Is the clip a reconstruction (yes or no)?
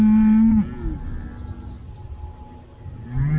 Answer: no